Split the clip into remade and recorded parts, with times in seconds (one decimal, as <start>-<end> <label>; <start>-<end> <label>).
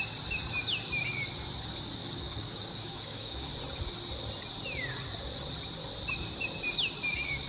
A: 0.0-2.0 recorded; 2.0-3.5 remade; 3.5-7.5 recorded